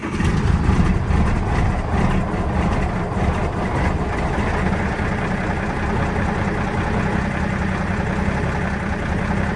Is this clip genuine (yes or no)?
yes